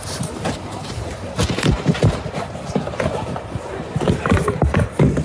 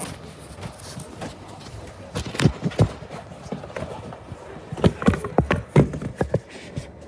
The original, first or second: second